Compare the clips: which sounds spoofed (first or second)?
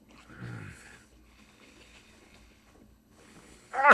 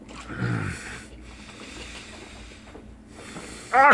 first